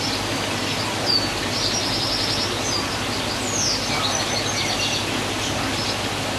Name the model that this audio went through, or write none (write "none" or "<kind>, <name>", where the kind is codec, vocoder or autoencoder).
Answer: none